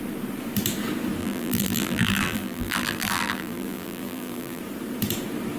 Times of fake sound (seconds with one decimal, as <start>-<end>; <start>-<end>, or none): 1.2-4.6